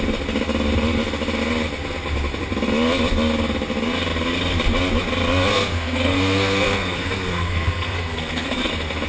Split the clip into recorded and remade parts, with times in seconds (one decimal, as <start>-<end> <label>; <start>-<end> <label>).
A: 0.0-5.5 recorded; 5.5-8.7 remade; 8.7-9.1 recorded